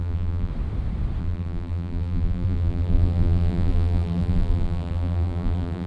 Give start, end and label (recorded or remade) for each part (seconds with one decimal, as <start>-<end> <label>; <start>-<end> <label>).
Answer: 0.0-0.5 remade; 0.5-1.2 recorded; 1.2-5.9 remade